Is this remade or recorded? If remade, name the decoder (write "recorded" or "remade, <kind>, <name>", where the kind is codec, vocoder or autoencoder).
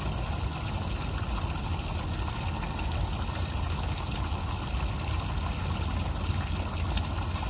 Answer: recorded